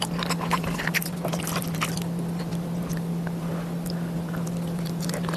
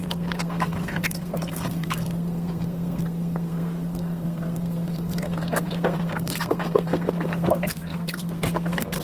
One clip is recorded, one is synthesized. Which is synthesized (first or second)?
second